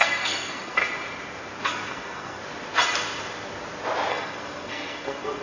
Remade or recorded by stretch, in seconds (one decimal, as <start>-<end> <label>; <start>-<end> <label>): 0.0-0.8 remade; 0.8-1.6 recorded; 1.6-2.4 remade; 2.4-4.1 recorded; 4.1-5.4 remade